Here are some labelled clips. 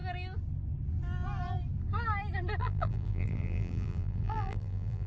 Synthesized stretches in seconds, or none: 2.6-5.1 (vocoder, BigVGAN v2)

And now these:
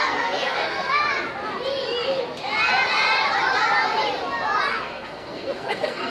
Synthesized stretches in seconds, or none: 0.0-1.0 (codec, SNAC); 4.7-6.1

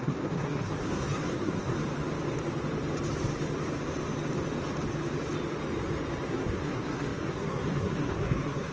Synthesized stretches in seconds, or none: 0.0-1.8 (codec, SNAC); 6.3-8.7